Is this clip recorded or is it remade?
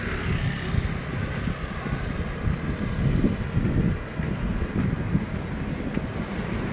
recorded